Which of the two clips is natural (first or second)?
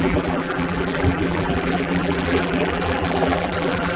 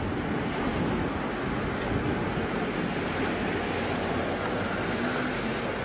second